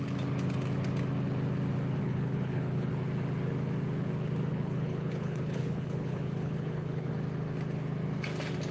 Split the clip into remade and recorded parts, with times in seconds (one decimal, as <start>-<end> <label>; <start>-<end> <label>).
0.0-2.0 recorded; 2.0-2.9 remade; 2.9-4.5 recorded; 4.5-7.1 remade; 7.1-8.7 recorded